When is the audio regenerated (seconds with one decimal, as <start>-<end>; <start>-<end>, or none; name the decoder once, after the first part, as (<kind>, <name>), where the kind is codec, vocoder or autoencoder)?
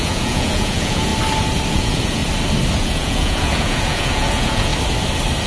0.0-1.1 (vocoder, Vocos); 1.7-2.2; 2.7-4.7